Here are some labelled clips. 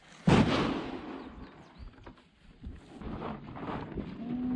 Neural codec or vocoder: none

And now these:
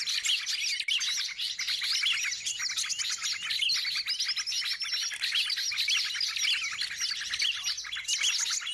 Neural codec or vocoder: none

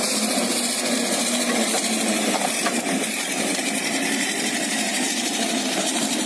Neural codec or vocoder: vocoder, BigVGAN v2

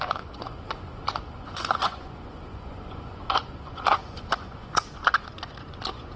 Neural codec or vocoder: vocoder, Vocos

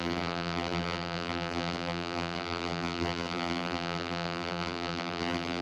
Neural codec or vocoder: vocoder, BigVGAN v2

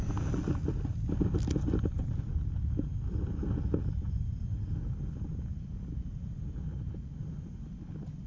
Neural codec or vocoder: none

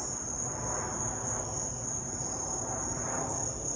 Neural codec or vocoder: none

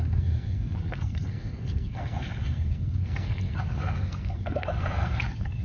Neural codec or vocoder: codec, SNAC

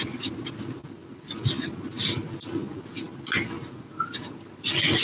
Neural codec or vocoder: none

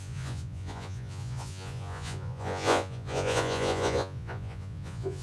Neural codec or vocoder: vocoder, Vocos